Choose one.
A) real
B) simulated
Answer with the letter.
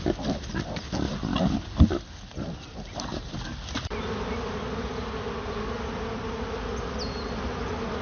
A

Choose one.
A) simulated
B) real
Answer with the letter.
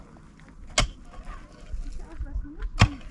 B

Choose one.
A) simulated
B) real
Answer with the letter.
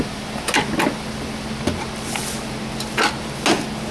B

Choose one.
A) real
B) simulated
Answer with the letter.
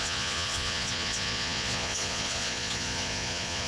B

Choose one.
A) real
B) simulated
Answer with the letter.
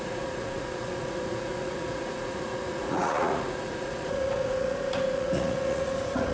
B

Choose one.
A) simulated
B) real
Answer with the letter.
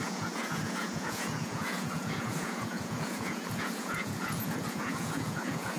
A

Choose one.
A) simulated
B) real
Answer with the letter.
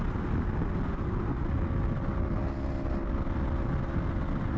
B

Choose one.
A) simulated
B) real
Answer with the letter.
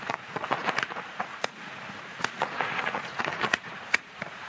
A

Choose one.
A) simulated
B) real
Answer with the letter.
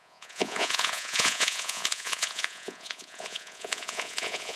A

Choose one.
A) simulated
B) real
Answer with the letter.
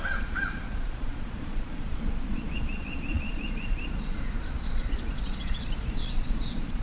A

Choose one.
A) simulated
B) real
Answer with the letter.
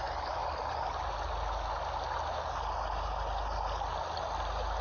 B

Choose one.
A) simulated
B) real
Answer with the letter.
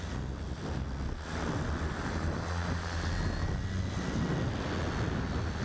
B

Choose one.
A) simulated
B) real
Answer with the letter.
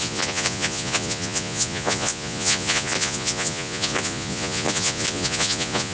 A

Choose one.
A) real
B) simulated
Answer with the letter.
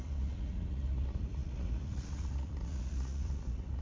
B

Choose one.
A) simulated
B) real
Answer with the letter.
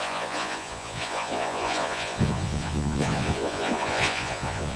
A